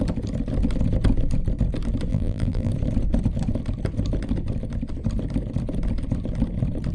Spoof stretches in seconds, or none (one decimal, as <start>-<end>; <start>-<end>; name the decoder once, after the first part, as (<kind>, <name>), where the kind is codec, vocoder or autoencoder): 2.1-2.7 (vocoder, BigVGAN v2)